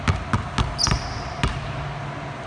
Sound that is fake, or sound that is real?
real